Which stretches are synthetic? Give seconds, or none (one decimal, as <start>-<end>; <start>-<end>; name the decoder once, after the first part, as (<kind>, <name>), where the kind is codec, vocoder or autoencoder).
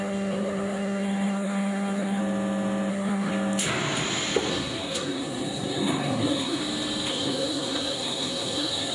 0.0-2.2 (codec, SNAC); 2.9-3.3; 4.5-6.6; 7.1-8.9